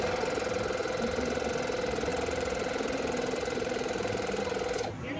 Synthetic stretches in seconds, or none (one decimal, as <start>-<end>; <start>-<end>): 0.8-1.5; 2.1-4.4